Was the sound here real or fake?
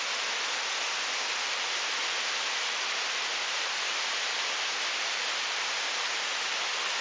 real